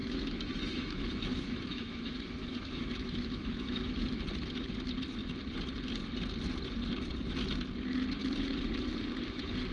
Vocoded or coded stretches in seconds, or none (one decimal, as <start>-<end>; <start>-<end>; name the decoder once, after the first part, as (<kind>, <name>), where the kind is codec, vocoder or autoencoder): 0.0-4.0 (autoencoder, DAC-VAE)